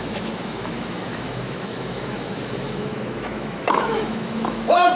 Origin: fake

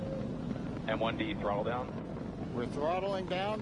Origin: real